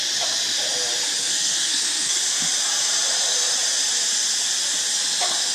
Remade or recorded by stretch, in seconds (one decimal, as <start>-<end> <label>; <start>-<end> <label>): 0.0-1.2 recorded; 1.2-2.2 remade; 2.2-5.5 recorded